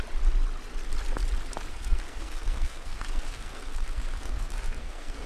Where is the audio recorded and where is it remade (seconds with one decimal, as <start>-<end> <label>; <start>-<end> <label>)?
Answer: 0.0-1.7 recorded; 1.7-5.3 remade